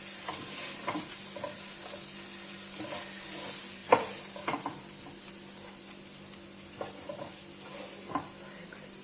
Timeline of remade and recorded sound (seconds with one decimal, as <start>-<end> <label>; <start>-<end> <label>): 0.0-9.0 recorded